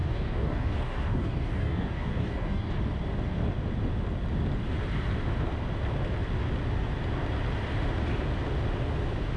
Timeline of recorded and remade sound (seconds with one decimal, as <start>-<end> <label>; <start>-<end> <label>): 0.0-2.7 remade; 2.7-9.4 recorded